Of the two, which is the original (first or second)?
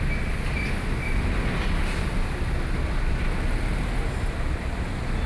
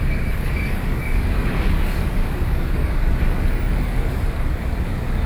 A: first